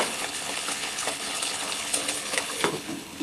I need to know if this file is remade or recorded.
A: remade